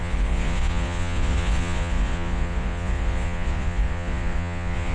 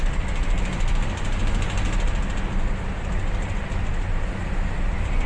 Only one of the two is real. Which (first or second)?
second